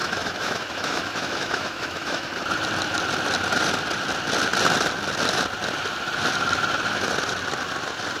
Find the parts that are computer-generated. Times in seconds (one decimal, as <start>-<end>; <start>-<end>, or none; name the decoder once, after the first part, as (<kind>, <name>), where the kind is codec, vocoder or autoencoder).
0.0-2.3 (autoencoder, DAC-VAE)